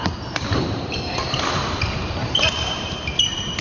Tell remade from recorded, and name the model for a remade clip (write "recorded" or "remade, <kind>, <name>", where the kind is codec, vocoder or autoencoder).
remade, vocoder, BigVGAN v2